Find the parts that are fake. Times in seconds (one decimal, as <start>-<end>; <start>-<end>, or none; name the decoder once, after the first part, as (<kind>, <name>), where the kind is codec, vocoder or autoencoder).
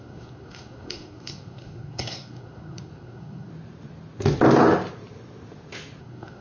0.0-3.5 (codec, SNAC); 6.0-6.4